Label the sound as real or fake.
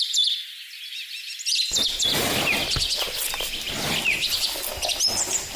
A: real